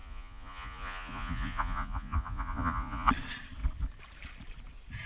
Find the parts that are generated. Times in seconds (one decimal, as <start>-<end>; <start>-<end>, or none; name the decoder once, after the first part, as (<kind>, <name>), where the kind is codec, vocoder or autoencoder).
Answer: 0.0-3.1 (vocoder, Vocos)